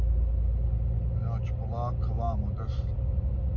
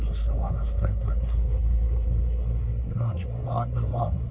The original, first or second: first